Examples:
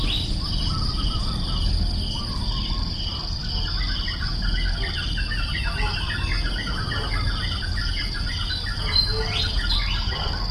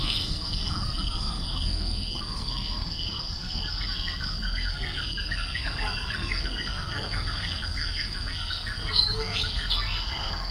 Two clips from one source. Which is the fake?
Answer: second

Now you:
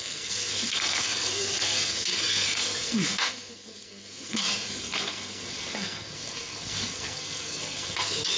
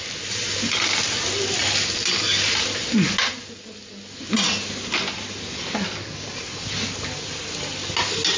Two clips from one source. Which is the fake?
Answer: first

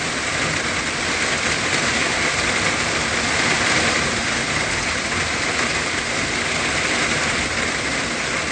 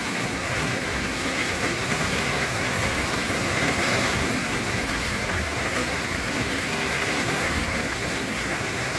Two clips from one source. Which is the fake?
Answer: second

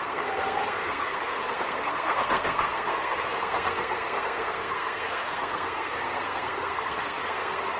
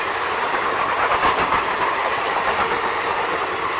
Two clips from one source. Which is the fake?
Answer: first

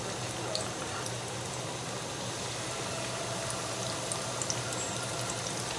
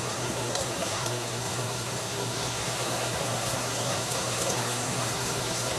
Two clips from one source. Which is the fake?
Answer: second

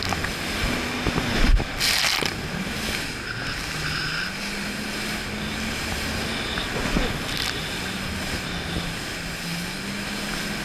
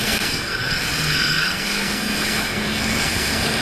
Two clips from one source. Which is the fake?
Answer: second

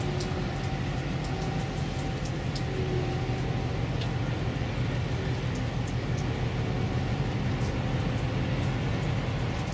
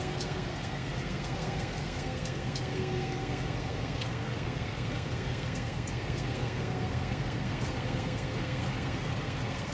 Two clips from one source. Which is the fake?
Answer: second